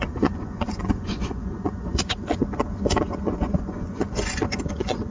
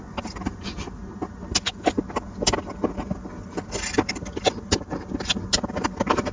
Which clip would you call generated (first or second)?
first